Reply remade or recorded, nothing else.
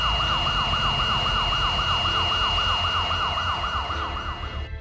recorded